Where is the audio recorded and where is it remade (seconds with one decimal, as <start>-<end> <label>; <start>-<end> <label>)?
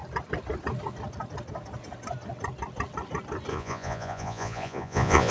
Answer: 0.0-3.5 recorded; 3.5-5.3 remade